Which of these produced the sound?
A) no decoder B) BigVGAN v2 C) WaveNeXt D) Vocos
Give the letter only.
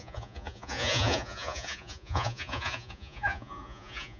D